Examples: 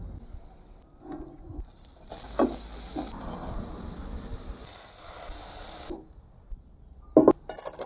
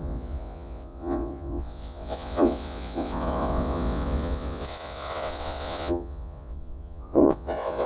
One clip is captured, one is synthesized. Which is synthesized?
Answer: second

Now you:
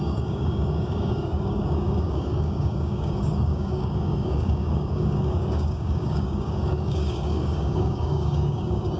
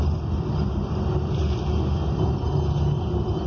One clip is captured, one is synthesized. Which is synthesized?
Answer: first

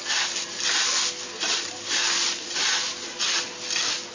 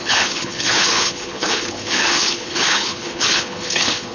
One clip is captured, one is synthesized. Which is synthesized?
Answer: second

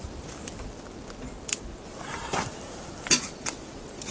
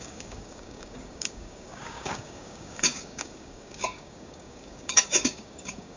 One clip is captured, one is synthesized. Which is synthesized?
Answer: second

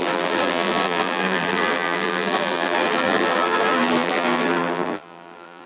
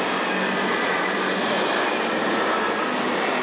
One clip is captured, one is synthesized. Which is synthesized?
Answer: first